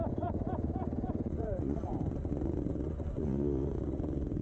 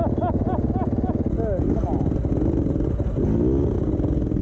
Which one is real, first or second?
second